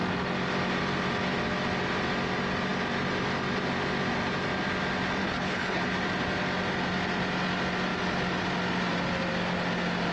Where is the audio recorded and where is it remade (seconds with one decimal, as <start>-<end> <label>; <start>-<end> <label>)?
0.0-5.2 recorded; 5.2-5.8 remade; 5.8-10.1 recorded